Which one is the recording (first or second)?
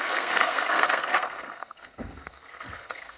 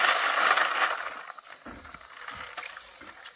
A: second